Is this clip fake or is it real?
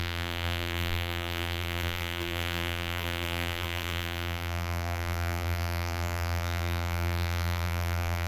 fake